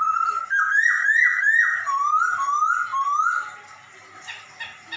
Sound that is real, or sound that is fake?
real